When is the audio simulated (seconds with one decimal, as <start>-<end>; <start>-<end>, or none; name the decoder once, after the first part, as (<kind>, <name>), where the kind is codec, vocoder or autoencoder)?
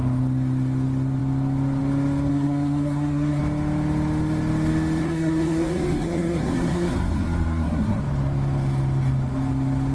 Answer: 2.3-3.4 (codec, SNAC); 5.0-8.0